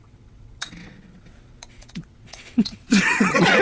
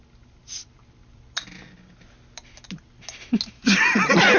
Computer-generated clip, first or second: first